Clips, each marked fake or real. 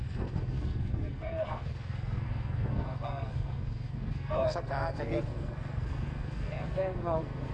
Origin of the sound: fake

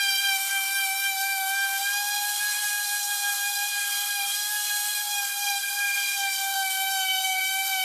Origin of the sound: fake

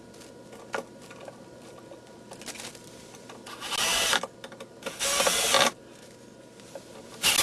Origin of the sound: real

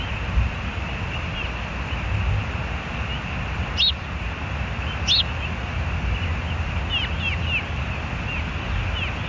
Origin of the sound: real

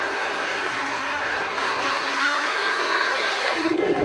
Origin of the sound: fake